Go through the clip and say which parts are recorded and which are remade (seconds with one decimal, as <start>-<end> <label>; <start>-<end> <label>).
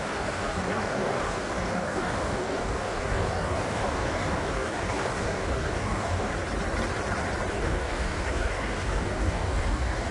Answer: 0.0-6.3 remade; 6.3-7.5 recorded; 7.5-10.1 remade